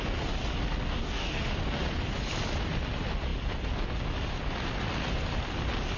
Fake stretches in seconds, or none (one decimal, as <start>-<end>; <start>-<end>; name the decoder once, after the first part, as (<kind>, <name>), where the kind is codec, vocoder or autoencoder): 0.9-1.4 (codec, DAC)